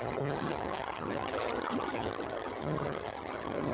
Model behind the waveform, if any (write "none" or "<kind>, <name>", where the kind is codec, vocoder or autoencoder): vocoder, HiFi-GAN